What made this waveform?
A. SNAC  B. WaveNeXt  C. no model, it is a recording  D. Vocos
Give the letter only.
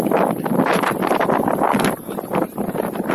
C